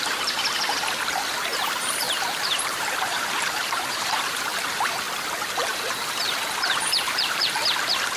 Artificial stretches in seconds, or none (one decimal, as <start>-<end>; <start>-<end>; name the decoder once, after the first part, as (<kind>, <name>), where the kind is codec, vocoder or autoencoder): 1.5-4.8 (vocoder, BigVGAN v2); 5.6-7.6